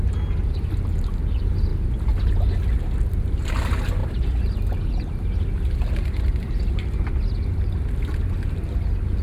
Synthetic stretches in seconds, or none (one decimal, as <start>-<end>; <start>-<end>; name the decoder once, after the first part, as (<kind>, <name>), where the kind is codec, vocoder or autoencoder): none